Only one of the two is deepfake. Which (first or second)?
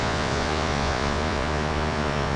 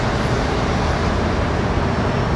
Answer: first